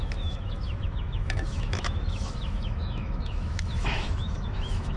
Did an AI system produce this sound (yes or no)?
yes